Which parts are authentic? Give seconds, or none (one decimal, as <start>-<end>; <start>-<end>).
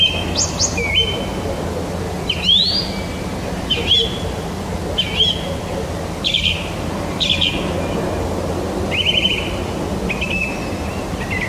0.0-11.5